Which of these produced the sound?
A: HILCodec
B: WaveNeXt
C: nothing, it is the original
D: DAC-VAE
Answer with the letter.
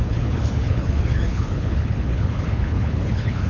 A